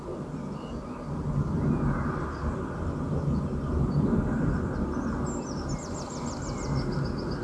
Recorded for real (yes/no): yes